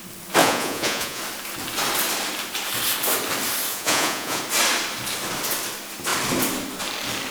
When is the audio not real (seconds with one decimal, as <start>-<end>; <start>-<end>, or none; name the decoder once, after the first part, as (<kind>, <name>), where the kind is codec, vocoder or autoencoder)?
0.4-1.2 (vocoder, Vocos); 3.7-4.4